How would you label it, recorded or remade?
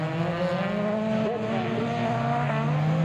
recorded